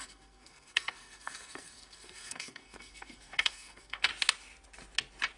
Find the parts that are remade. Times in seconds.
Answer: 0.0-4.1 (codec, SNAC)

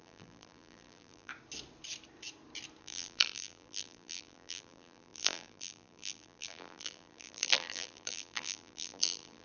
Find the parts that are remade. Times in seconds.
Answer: 0.0-1.3 (vocoder, BigVGAN v2); 2.8-9.4

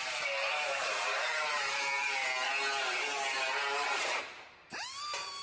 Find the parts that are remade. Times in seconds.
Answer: 0.0-2.2 (vocoder, BigVGAN v2); 4.2-5.4